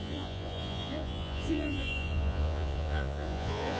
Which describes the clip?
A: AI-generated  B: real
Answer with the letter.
A